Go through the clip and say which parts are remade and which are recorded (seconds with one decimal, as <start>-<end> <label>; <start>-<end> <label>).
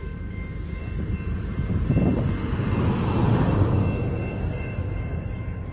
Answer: 0.0-0.8 remade; 0.8-3.4 recorded; 3.4-3.8 remade; 3.8-4.3 recorded; 4.3-5.7 remade